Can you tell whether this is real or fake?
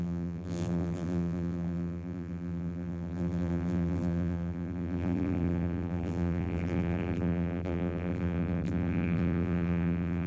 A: fake